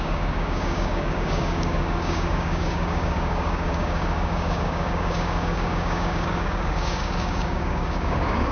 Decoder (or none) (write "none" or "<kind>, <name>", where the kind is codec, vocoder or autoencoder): codec, DAC